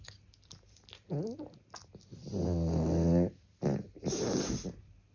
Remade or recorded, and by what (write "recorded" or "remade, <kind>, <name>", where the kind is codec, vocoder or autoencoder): recorded